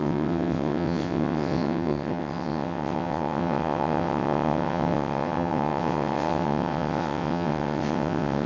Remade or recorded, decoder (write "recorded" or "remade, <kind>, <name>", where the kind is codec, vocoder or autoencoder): remade, vocoder, WaveNeXt